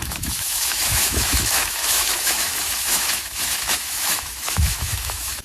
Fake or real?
fake